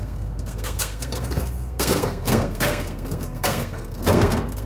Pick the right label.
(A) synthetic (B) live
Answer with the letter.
A